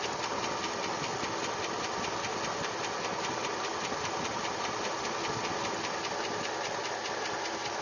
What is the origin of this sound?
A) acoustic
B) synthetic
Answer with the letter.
A